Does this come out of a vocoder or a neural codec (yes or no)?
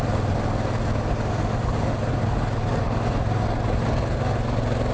no